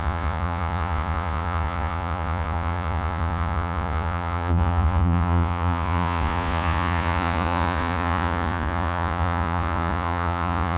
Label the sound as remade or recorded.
remade